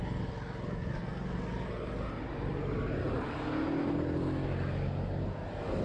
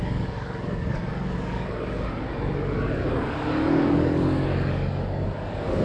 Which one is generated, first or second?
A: second